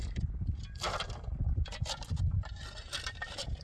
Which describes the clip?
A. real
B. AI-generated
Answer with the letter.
B